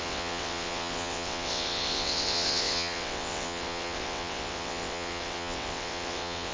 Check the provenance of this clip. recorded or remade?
remade